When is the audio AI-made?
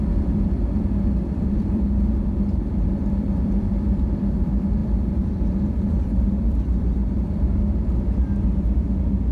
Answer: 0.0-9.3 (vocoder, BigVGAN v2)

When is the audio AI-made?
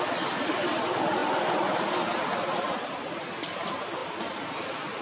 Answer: none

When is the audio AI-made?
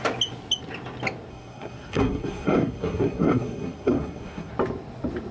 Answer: 1.3-4.5 (codec, SNAC)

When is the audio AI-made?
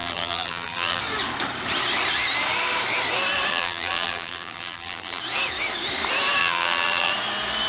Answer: 0.0-1.0 (vocoder, BigVGAN v2); 3.5-5.2; 6.4-7.1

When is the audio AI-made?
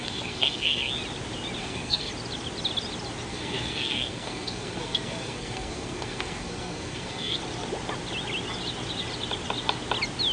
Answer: 0.0-0.9 (codec, SNAC); 1.6-2.1; 3.3-7.4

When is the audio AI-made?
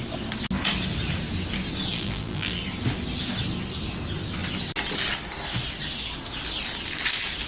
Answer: 1.9-2.6 (vocoder, BigVGAN v2)